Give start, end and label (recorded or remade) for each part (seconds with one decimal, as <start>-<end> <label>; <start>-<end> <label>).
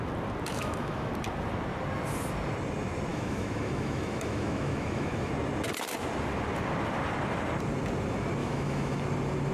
0.0-0.5 recorded; 0.5-1.1 remade; 1.1-3.1 recorded; 3.1-5.3 remade; 5.3-8.4 recorded; 8.4-9.0 remade; 9.0-9.5 recorded